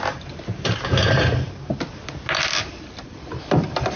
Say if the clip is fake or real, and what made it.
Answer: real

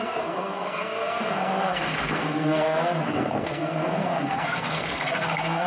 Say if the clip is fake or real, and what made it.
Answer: fake, codec, SNAC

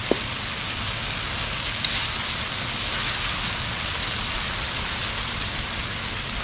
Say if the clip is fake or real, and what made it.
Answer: real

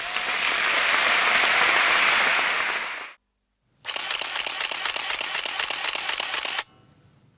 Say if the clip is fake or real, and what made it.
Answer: real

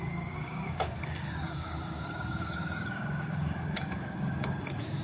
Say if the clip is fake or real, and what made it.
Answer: fake, codec, DAC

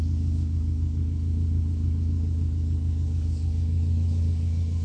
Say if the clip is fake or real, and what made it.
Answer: fake, codec, DAC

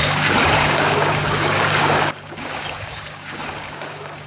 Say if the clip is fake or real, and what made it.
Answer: fake, codec, DAC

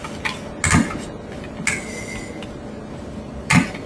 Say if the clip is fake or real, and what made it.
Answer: real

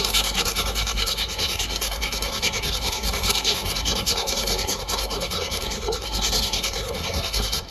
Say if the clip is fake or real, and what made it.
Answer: fake, codec, SNAC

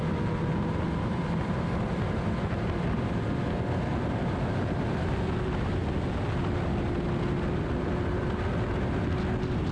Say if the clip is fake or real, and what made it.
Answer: real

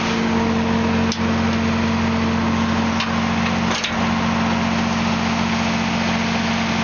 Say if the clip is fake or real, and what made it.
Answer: real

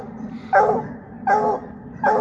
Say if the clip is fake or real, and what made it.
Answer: real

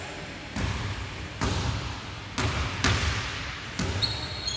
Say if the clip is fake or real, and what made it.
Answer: real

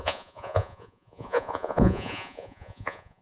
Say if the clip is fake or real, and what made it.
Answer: fake, vocoder, Vocos